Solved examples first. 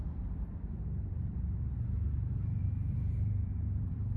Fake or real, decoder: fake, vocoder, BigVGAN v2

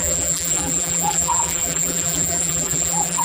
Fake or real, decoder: fake, vocoder, BigVGAN v2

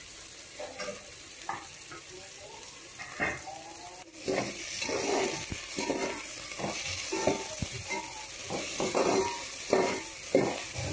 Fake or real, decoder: fake, vocoder, BigVGAN v2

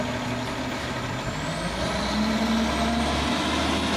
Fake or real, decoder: real